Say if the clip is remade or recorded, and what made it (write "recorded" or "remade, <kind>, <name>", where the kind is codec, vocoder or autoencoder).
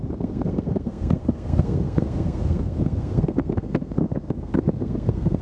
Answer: remade, codec, SNAC